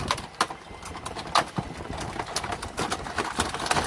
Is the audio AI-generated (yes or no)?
no